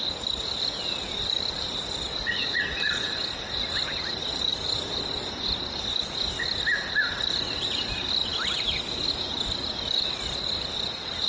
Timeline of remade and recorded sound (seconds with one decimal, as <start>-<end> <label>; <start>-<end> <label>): 0.0-2.1 recorded; 2.1-3.1 remade; 3.1-11.3 recorded